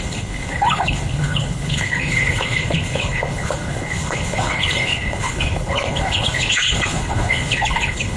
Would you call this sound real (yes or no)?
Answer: no